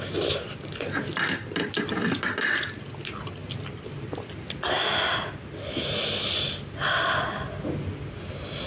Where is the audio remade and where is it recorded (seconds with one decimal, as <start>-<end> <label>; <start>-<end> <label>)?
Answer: 0.0-8.7 recorded